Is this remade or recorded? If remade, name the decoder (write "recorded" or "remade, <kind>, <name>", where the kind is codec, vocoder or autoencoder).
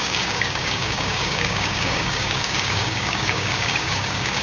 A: remade, codec, DAC